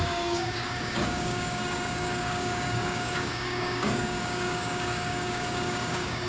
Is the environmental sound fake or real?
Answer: fake